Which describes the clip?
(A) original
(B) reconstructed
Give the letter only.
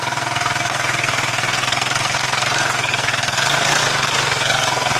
B